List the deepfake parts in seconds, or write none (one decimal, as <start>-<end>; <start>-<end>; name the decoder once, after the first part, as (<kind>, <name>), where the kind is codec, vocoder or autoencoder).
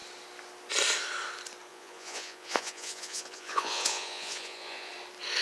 1.7-4.9 (vocoder, Vocos)